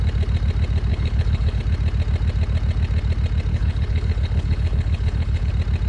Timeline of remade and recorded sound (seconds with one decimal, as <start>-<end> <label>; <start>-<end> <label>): 0.0-0.9 recorded; 0.9-1.6 remade; 1.6-3.5 recorded; 3.5-5.5 remade; 5.5-5.9 recorded